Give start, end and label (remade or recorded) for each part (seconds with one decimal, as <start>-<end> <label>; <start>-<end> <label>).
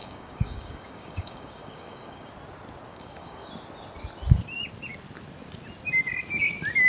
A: 0.0-2.3 remade; 2.3-2.9 recorded; 2.9-3.5 remade; 3.5-6.9 recorded